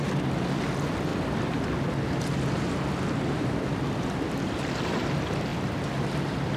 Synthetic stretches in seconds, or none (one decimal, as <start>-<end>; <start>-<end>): none